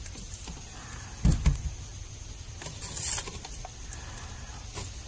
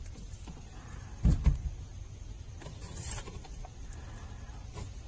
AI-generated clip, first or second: second